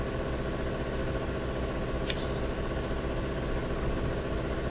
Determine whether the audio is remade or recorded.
recorded